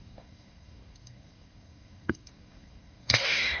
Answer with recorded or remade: remade